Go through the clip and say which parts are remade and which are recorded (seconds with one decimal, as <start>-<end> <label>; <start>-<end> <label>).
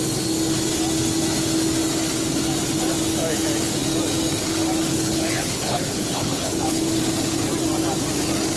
0.0-4.9 recorded; 4.9-7.0 remade; 7.0-8.6 recorded